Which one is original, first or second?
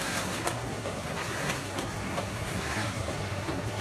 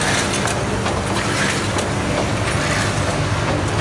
second